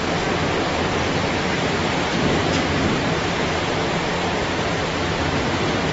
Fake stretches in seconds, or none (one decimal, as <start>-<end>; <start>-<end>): 2.1-5.9